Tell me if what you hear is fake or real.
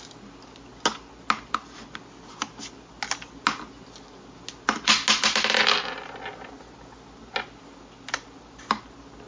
real